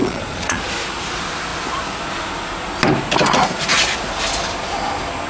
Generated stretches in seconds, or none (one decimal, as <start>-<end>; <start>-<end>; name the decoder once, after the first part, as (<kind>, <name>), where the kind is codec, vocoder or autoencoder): 0.0-0.6 (vocoder, Vocos)